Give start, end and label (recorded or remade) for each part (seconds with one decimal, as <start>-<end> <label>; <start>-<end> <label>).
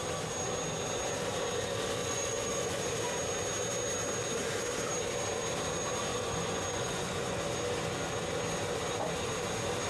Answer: 0.0-2.0 recorded; 2.0-2.8 remade; 2.8-6.1 recorded; 6.1-7.4 remade; 7.4-9.9 recorded